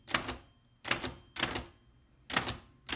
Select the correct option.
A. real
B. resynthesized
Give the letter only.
A